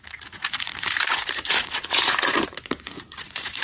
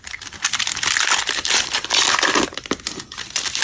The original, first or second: second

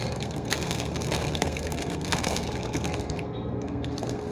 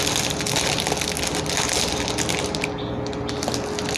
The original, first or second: second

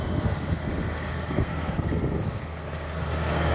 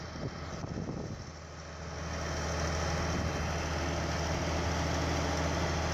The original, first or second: second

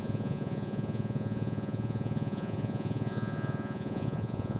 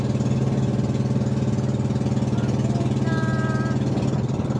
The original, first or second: second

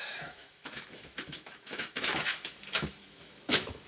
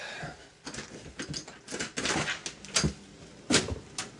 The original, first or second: second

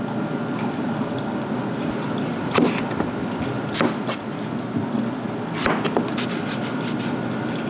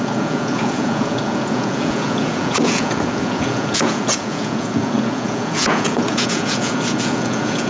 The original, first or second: first